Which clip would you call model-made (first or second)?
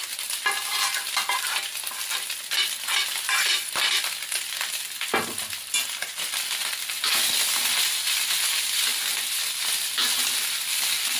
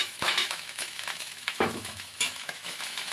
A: second